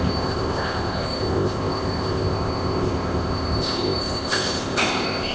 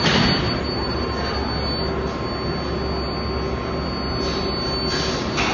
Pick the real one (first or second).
second